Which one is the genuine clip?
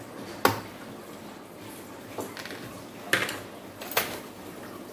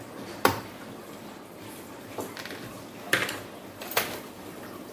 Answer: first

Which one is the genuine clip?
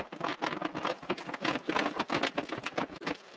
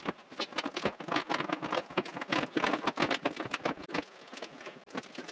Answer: second